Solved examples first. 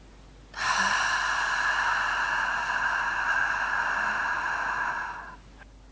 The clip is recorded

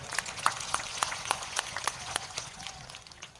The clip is remade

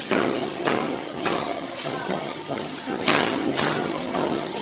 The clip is remade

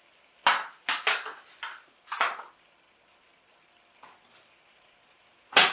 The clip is recorded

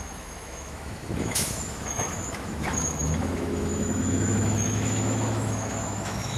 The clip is remade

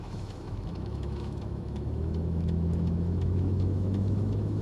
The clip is remade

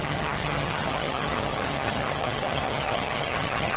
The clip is remade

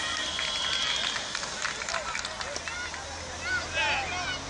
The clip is recorded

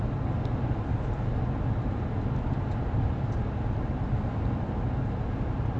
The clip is recorded